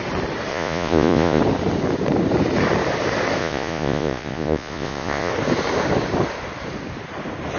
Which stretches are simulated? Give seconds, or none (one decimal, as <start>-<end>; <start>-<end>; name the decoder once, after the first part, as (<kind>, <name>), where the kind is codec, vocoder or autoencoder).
0.5-1.4 (vocoder, Vocos); 3.4-5.3